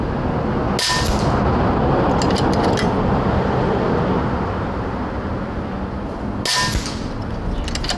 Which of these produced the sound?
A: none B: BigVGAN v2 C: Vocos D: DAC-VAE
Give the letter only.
A